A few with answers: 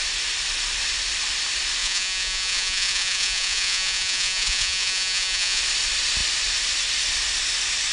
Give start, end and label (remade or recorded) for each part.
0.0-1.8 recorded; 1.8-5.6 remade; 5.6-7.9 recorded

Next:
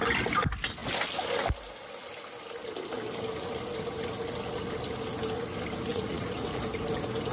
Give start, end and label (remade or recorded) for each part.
0.0-5.9 recorded; 5.9-6.6 remade; 6.6-7.3 recorded

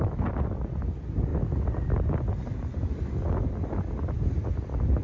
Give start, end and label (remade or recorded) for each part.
0.0-5.0 recorded

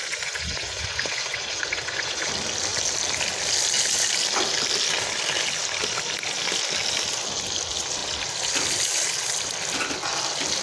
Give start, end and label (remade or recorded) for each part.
0.0-2.3 remade; 2.3-10.6 recorded

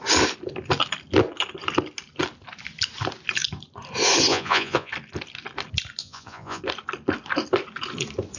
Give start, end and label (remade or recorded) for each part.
0.0-4.3 recorded; 4.3-4.9 remade; 4.9-6.0 recorded; 6.0-6.6 remade; 6.6-8.4 recorded

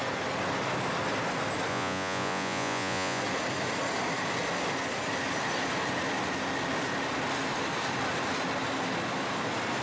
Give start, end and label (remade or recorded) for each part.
0.0-1.7 recorded; 1.7-3.2 remade; 3.2-9.8 recorded